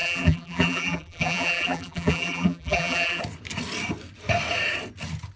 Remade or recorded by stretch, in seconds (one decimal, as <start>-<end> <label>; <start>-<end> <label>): 0.0-3.2 remade; 3.2-5.4 recorded